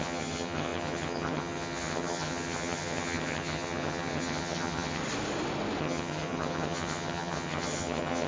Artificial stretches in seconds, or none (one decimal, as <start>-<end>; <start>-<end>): 0.0-5.0; 5.8-8.3